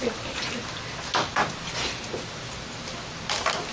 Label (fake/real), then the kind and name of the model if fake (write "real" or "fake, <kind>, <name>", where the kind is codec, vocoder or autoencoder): real